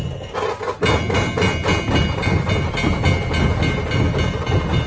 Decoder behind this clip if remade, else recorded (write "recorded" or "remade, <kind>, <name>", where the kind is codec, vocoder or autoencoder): recorded